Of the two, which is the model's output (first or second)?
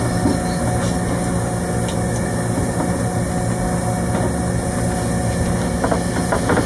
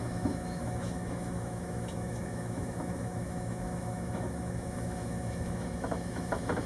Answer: second